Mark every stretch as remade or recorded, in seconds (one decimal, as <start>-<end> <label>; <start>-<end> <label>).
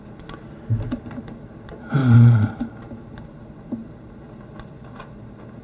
0.0-2.0 recorded; 2.0-2.5 remade; 2.5-5.6 recorded